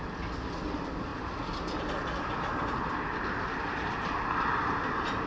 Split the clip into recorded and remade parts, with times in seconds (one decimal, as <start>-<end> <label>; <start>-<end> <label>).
0.0-5.3 recorded